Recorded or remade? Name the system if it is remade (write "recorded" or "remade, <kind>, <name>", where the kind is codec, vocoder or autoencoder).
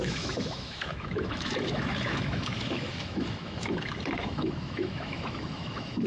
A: remade, autoencoder, DAC-VAE